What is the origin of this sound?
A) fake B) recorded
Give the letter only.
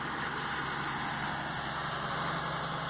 B